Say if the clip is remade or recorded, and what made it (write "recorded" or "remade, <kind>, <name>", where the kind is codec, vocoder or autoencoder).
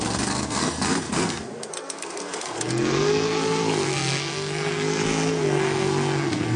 remade, codec, SNAC